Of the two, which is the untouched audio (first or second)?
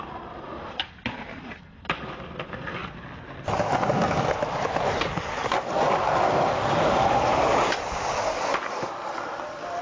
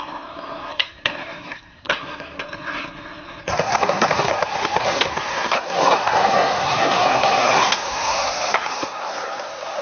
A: first